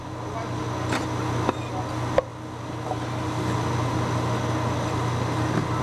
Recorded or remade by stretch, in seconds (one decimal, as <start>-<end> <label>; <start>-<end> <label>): 0.0-5.8 recorded